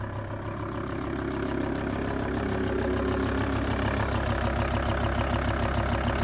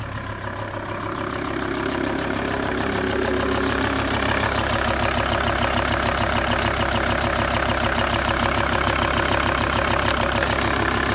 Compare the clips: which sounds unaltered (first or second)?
first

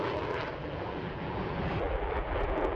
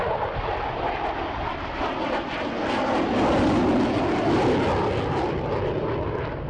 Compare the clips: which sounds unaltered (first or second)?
second